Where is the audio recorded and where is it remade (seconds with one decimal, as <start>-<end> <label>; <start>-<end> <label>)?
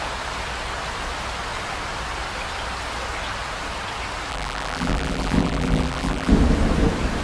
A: 0.0-4.3 recorded; 4.3-6.3 remade; 6.3-7.2 recorded